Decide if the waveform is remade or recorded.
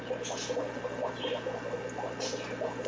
recorded